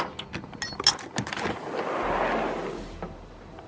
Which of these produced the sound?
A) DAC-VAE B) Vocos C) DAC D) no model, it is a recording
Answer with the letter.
D